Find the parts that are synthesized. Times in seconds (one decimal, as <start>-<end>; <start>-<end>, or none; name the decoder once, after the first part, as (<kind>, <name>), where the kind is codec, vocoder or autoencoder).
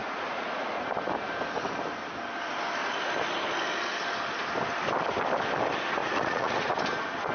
0.0-0.9 (vocoder, Vocos); 6.0-6.8